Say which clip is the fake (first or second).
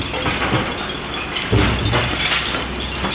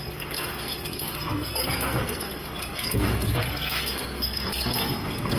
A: second